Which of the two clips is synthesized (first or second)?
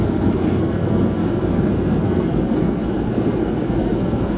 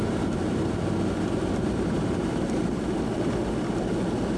first